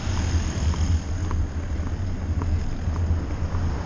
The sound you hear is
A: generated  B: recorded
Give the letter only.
B